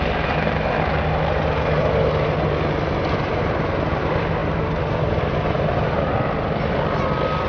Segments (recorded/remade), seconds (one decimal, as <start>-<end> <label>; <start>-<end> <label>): 0.0-7.5 recorded